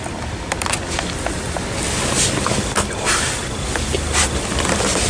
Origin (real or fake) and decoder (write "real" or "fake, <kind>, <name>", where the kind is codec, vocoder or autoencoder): real